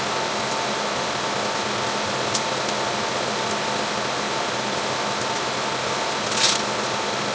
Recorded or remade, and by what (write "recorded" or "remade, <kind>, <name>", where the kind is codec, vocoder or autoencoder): recorded